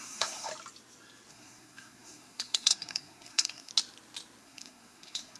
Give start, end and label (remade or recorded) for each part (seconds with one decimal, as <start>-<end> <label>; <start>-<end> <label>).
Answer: 0.0-0.5 remade; 0.5-1.3 recorded; 1.3-3.7 remade; 3.7-4.4 recorded; 4.4-5.4 remade